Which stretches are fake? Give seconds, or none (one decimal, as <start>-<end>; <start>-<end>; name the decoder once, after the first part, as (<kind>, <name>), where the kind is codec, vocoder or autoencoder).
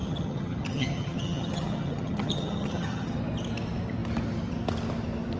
0.0-3.2 (vocoder, HiFi-GAN)